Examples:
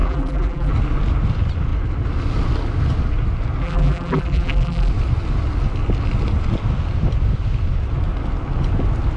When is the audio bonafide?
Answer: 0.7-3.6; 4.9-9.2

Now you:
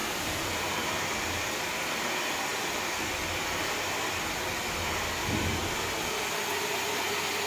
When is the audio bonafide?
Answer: 1.0-5.6; 6.5-7.5